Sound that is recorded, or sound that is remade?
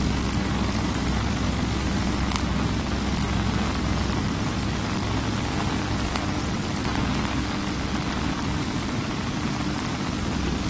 recorded